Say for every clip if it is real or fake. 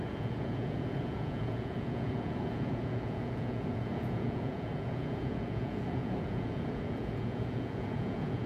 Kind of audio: fake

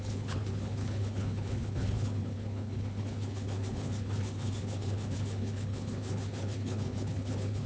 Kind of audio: fake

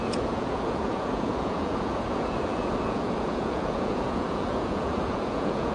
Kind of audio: fake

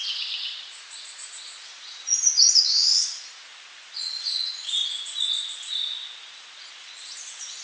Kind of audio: fake